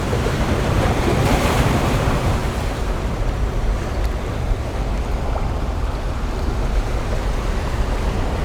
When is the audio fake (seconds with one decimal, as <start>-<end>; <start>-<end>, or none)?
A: 0.0-4.9; 7.2-8.4